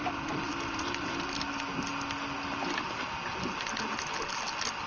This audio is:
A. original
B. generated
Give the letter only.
A